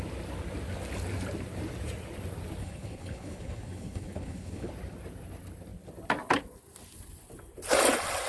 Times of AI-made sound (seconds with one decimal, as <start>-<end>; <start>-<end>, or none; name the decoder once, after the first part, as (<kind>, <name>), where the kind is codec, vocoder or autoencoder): 2.6-4.7 (codec, HILCodec)